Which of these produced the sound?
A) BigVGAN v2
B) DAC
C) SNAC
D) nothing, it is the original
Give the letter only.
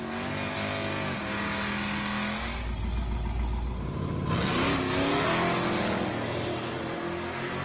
D